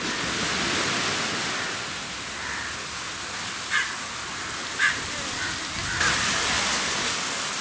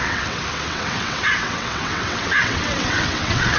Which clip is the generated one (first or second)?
second